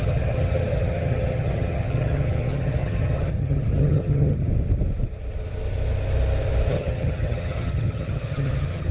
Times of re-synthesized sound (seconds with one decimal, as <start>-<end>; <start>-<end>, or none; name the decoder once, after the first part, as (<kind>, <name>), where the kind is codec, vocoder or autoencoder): 0.0-4.5 (vocoder, HiFi-GAN); 6.7-8.9